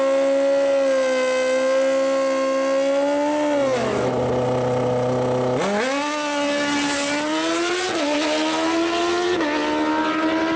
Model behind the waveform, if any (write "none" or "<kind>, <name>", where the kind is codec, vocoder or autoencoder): none